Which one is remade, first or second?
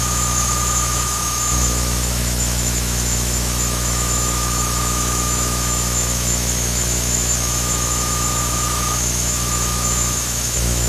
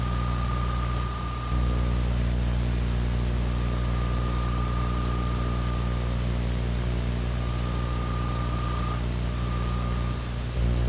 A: first